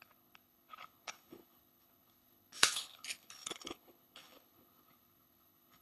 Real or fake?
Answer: fake